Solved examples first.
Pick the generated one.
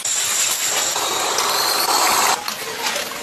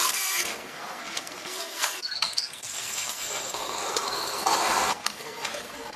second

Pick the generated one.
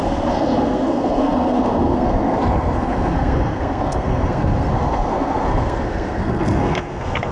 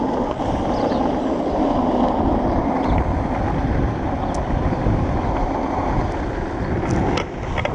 first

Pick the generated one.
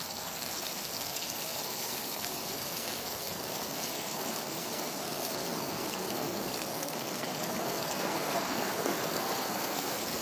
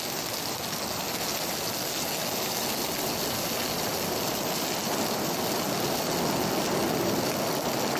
first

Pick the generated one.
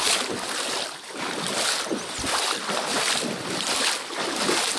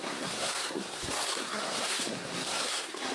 second